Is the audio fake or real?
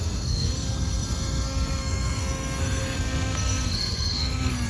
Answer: fake